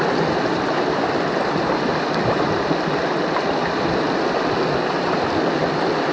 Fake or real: real